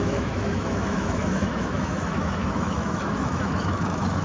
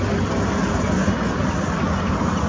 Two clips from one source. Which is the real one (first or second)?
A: second